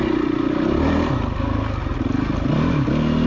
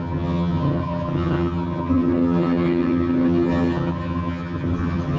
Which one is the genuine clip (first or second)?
first